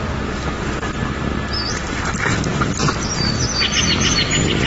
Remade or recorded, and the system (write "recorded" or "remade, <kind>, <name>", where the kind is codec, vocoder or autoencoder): recorded